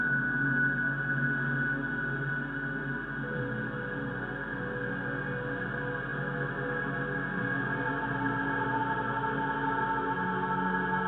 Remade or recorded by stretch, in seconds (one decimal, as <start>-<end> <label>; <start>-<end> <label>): 0.0-11.1 recorded

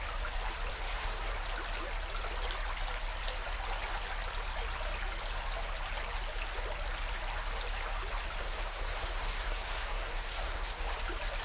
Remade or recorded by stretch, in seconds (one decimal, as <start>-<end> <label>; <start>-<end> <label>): 0.0-0.7 recorded; 0.7-1.3 remade; 1.3-8.4 recorded; 8.4-10.8 remade; 10.8-11.4 recorded